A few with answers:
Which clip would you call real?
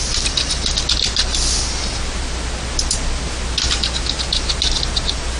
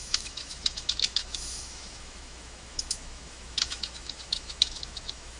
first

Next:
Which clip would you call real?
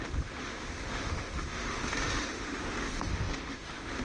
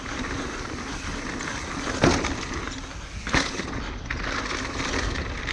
second